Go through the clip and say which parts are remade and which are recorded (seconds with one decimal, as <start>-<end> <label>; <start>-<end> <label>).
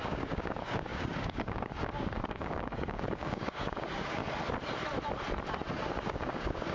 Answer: 0.0-4.2 remade; 4.2-6.0 recorded; 6.0-6.7 remade